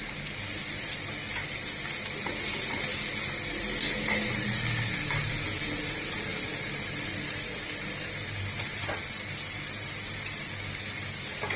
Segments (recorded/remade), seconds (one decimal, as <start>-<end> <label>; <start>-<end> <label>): 0.0-11.6 recorded